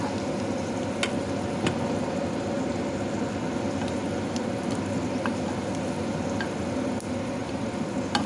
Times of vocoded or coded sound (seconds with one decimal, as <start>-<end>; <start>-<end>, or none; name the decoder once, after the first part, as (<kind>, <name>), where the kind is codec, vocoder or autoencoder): none